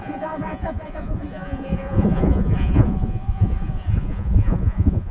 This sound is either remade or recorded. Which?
remade